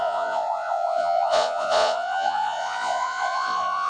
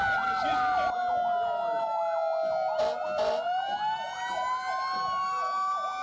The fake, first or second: first